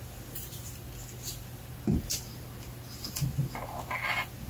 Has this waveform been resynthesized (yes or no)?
no